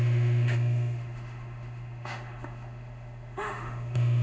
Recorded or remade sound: remade